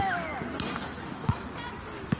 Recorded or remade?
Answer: recorded